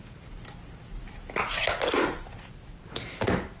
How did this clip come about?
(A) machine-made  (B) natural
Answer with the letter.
B